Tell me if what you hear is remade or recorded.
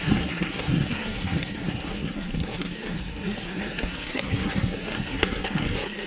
remade